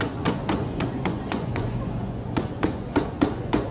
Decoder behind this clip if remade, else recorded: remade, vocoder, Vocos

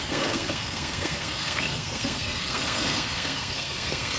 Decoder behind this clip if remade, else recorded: remade, codec, SNAC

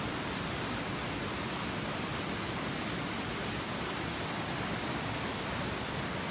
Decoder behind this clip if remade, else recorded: recorded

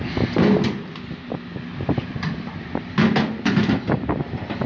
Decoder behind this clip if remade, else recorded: recorded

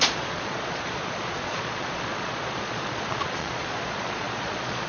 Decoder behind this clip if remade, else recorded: remade, vocoder, Vocos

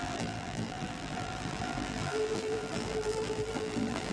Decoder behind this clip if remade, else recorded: remade, vocoder, BigVGAN v2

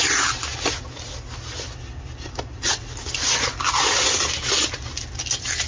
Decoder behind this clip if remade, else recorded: recorded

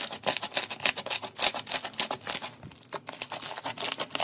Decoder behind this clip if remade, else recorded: recorded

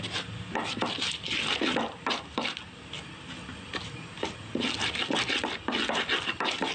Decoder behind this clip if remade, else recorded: recorded